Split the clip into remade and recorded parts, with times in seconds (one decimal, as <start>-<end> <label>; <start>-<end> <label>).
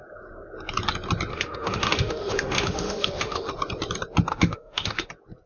0.0-1.3 recorded; 1.3-3.5 remade; 3.5-4.3 recorded; 4.3-5.1 remade; 5.1-5.5 recorded